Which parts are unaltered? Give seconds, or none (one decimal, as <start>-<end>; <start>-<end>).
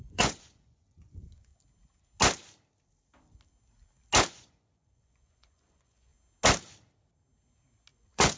1.5-4.3; 6.1-7.9